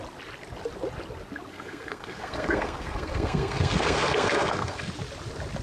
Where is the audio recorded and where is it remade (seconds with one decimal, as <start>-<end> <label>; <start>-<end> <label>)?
0.0-1.5 recorded; 1.5-4.9 remade; 4.9-5.6 recorded